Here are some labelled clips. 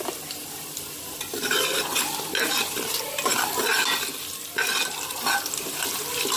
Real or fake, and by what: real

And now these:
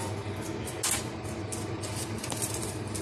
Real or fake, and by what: real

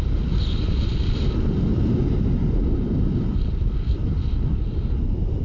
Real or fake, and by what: real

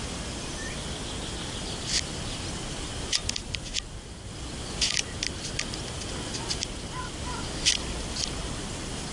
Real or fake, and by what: real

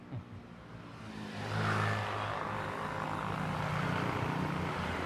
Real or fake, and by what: real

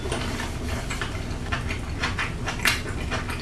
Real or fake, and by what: real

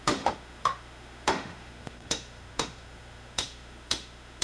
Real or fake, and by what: fake, autoencoder, DAC-VAE